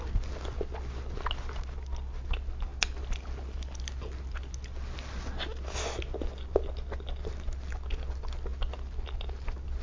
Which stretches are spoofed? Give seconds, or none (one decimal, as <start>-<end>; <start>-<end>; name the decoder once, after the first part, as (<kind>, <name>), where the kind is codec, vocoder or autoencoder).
none